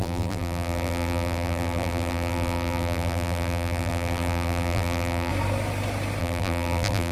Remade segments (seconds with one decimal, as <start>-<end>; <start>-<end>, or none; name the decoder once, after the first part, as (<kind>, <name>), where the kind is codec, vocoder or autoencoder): 0.0-5.3 (vocoder, BigVGAN v2); 6.2-7.1